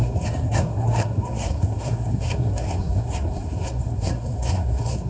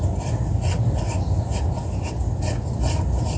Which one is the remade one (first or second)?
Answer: first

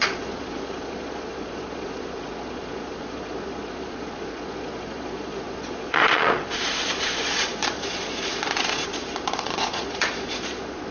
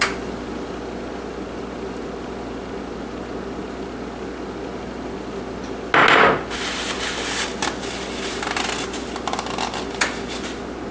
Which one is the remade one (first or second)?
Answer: first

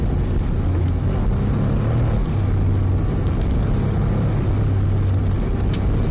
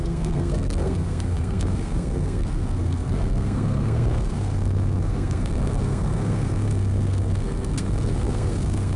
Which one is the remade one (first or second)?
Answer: second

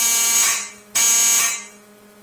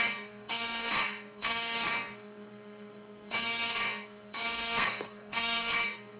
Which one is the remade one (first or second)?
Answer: second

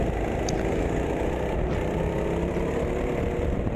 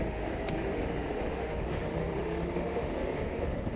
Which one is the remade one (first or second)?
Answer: second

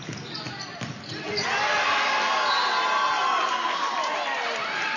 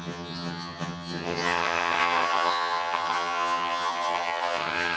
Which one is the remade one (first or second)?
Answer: second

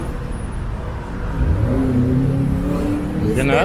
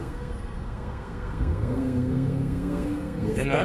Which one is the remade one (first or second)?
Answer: second